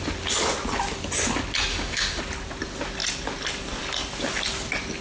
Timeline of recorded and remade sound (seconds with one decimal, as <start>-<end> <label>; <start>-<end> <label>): 0.0-1.7 recorded; 1.7-2.2 remade; 2.2-5.0 recorded